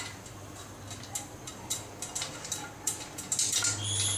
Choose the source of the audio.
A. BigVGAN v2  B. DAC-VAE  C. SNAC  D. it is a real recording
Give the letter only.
D